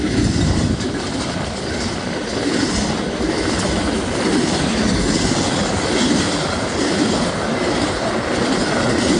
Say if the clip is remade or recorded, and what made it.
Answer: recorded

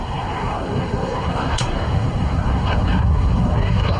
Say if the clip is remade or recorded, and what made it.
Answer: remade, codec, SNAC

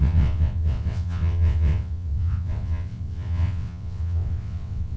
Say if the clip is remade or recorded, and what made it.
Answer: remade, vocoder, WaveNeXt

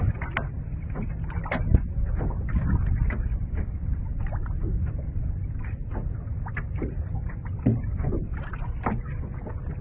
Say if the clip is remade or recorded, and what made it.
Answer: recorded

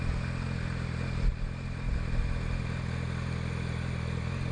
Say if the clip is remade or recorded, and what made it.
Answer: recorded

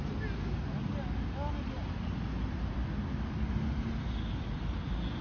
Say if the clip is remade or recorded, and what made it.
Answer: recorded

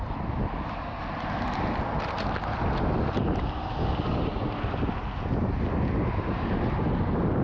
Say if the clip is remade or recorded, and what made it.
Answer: recorded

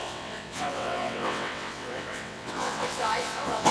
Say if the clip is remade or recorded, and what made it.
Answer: remade, vocoder, WaveNeXt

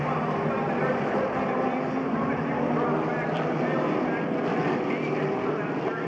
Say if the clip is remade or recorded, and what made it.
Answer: recorded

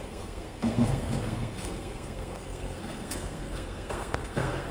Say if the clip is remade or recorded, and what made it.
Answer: remade, codec, SNAC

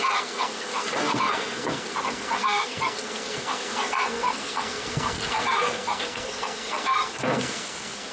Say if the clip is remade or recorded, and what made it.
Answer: remade, codec, SNAC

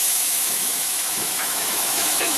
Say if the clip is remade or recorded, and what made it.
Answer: remade, autoencoder, DAC-VAE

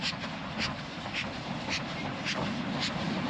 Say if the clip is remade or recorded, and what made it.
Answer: remade, vocoder, BigVGAN v2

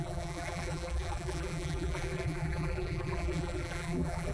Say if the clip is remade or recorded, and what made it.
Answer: remade, vocoder, BigVGAN v2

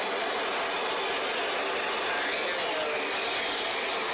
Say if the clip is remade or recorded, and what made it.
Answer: recorded